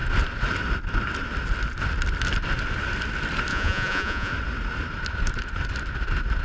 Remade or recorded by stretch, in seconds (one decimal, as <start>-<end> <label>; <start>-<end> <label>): 0.0-3.5 recorded; 3.5-4.3 remade; 4.3-6.4 recorded